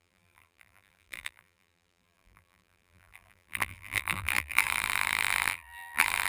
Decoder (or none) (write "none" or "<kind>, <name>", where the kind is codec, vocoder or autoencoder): vocoder, BigVGAN v2